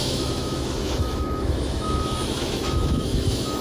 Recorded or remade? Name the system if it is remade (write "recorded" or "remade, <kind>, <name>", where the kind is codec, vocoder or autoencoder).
remade, autoencoder, DAC-VAE